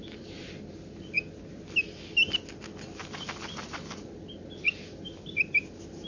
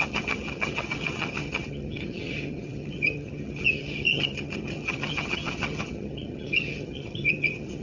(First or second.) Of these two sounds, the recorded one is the first